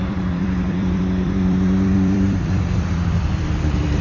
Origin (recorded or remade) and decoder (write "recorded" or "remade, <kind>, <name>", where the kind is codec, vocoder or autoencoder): remade, vocoder, BigVGAN v2